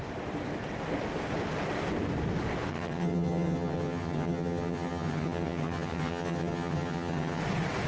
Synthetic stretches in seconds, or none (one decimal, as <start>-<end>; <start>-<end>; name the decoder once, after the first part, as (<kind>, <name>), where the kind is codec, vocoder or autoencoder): 2.7-7.4 (vocoder, HiFi-GAN)